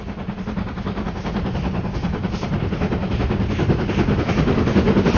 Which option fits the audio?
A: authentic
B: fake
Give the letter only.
A